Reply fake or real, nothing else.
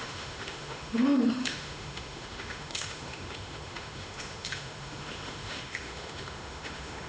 fake